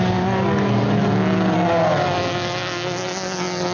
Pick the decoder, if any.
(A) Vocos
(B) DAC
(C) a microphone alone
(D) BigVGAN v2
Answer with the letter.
C